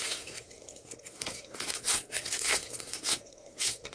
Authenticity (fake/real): fake